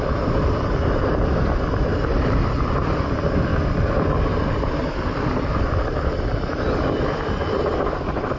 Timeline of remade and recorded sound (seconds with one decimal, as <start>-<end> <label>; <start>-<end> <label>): 0.0-3.5 remade; 3.5-8.4 recorded